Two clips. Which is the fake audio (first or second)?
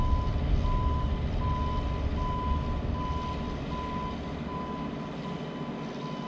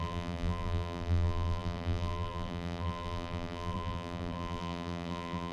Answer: second